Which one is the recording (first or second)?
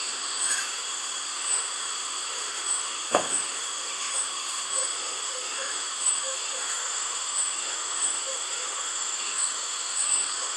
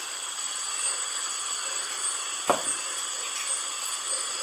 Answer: second